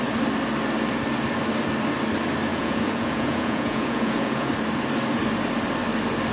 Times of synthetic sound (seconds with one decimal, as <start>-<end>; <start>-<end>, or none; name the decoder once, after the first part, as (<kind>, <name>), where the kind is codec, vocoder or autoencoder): 2.5-4.5 (vocoder, Vocos)